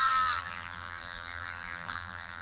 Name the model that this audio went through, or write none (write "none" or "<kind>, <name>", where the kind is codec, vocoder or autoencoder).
vocoder, BigVGAN v2